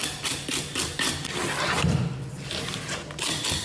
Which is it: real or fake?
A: fake